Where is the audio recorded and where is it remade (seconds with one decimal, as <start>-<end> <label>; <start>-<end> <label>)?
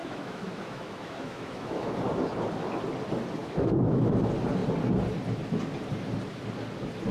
0.0-1.9 remade; 1.9-3.4 recorded; 3.4-4.0 remade; 4.0-7.1 recorded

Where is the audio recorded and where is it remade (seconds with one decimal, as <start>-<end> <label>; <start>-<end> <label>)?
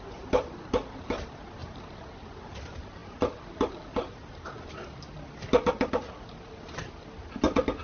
0.0-7.8 recorded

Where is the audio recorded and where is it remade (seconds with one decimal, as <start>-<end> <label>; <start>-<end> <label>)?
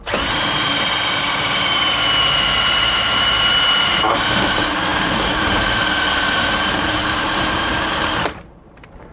0.0-9.1 remade